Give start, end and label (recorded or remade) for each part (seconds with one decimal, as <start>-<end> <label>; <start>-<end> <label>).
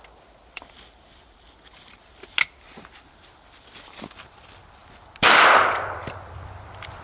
0.0-7.0 recorded